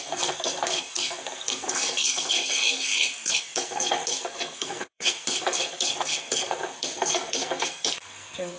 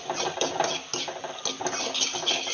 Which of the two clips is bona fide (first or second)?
second